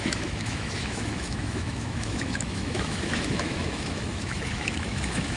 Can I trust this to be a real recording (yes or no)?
no